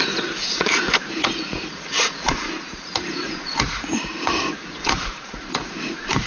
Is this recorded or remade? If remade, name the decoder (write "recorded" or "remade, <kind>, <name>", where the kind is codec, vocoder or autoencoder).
remade, vocoder, Vocos